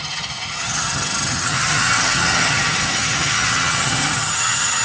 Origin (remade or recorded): remade